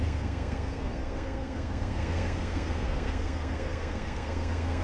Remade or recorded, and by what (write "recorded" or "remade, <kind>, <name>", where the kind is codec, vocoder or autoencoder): remade, codec, SNAC